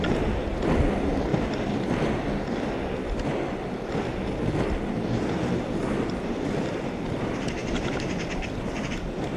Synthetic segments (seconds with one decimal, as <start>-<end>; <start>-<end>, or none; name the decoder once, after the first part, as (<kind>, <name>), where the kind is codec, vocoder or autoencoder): 0.0-1.3 (vocoder, BigVGAN v2); 5.8-9.4